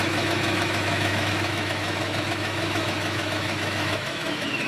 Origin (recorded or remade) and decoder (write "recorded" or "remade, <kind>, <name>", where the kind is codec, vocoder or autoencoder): remade, autoencoder, DAC-VAE